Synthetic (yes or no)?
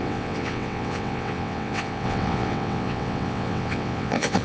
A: yes